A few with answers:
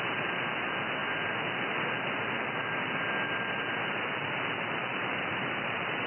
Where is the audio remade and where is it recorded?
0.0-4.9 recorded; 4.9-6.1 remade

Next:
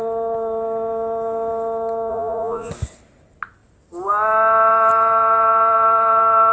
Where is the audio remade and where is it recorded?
0.0-2.1 recorded; 2.1-2.7 remade; 2.7-6.5 recorded

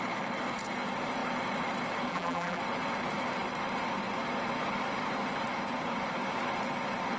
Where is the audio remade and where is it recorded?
0.0-2.1 recorded; 2.1-2.6 remade; 2.6-7.2 recorded

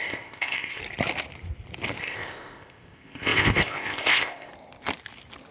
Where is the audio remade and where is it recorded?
0.0-0.8 remade; 0.8-2.0 recorded; 2.0-4.5 remade; 4.5-5.5 recorded

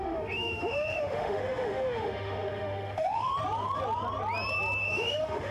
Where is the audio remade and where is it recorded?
0.0-3.3 remade; 3.3-4.8 recorded; 4.8-5.5 remade